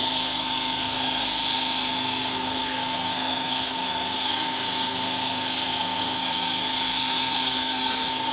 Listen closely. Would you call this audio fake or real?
fake